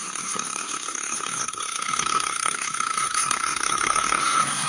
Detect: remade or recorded remade